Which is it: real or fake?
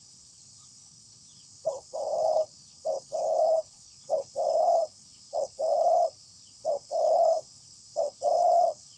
fake